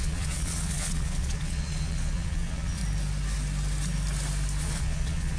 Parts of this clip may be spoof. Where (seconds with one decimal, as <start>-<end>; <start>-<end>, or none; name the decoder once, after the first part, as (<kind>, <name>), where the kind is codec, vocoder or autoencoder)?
0.0-2.8 (vocoder, Vocos); 4.6-5.4